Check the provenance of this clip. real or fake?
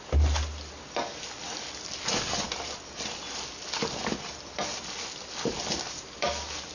real